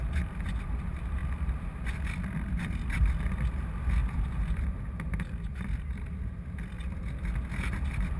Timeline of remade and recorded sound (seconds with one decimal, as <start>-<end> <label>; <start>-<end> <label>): 0.0-8.2 remade